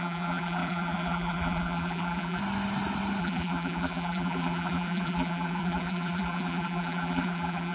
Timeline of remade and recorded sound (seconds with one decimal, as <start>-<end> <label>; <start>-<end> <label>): 0.0-2.4 remade; 2.4-3.2 recorded; 3.2-7.7 remade